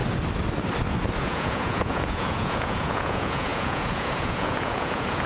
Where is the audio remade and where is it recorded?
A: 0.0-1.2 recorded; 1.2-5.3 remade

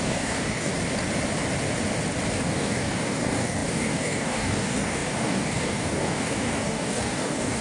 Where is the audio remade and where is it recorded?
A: 0.0-0.7 remade; 0.7-2.3 recorded; 2.3-7.6 remade

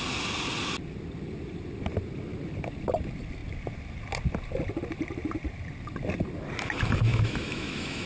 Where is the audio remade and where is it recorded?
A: 0.0-7.1 recorded; 7.1-8.1 remade

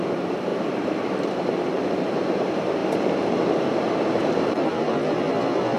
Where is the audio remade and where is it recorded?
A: 0.0-4.9 remade; 4.9-5.8 recorded

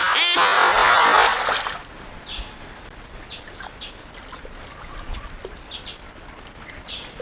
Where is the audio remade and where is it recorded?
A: 0.0-7.2 recorded

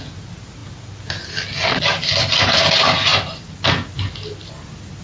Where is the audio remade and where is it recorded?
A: 0.0-5.0 recorded